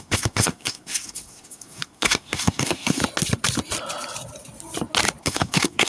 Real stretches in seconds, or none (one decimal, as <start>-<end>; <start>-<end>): 3.0-5.2